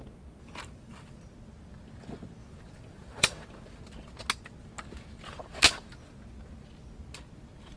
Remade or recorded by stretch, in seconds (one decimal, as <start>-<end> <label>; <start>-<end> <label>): 0.0-0.4 recorded; 0.4-1.2 remade; 1.2-2.4 recorded; 2.4-3.8 remade; 3.8-5.4 recorded; 5.4-5.9 remade; 5.9-7.8 recorded